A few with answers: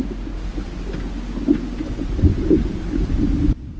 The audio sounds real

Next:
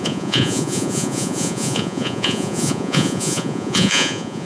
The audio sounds fake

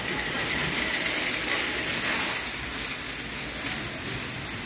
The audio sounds real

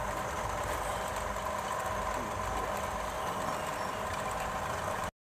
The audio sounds real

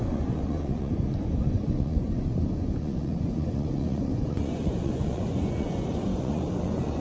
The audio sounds fake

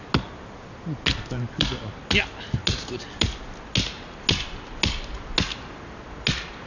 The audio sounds real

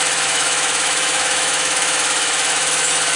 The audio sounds fake